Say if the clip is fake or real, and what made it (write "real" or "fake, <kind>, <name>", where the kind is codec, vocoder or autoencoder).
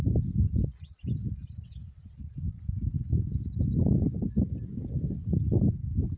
real